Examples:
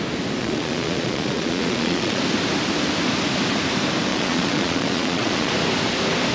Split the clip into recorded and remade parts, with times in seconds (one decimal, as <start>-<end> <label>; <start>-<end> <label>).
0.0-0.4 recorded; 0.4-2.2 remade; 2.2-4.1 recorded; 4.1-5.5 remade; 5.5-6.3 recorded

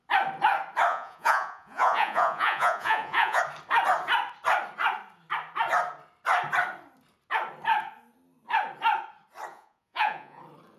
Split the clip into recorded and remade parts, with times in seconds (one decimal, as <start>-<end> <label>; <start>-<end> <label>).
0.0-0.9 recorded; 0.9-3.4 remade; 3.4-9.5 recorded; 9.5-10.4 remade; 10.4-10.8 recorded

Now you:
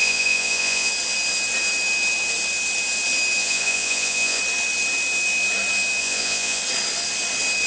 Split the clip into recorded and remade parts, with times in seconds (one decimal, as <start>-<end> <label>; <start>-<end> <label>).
0.0-0.9 remade; 0.9-3.4 recorded; 3.4-4.4 remade; 4.4-6.0 recorded; 6.0-6.6 remade; 6.6-7.7 recorded

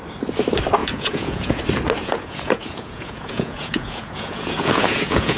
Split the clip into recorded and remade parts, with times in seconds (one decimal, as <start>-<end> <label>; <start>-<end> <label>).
0.0-0.8 recorded; 0.8-1.6 remade; 1.6-2.0 recorded; 2.0-5.4 remade

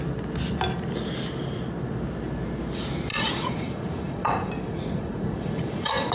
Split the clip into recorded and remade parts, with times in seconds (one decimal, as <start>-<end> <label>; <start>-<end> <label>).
0.0-3.1 recorded; 3.1-6.1 remade